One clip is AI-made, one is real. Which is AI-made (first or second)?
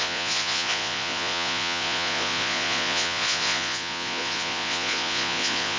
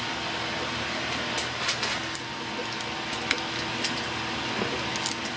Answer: first